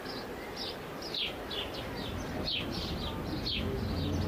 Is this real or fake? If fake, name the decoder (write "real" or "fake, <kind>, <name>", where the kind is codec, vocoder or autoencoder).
real